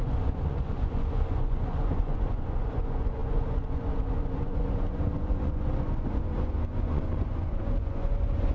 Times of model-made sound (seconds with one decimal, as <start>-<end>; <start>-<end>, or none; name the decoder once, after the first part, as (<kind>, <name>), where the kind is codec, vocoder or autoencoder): 0.0-8.5 (vocoder, Vocos)